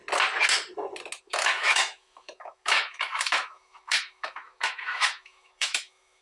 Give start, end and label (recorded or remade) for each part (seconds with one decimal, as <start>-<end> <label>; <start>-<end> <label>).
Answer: 0.0-1.2 recorded; 1.2-6.2 remade